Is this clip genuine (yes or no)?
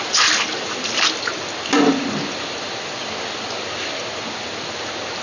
yes